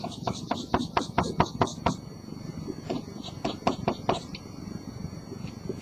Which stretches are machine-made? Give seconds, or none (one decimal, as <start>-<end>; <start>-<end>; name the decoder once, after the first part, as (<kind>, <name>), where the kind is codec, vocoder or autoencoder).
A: 1.7-5.2 (vocoder, BigVGAN v2)